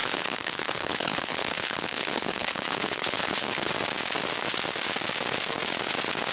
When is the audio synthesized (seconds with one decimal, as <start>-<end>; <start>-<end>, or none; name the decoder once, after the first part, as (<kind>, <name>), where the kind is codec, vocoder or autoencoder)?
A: 0.0-3.7 (codec, HILCodec)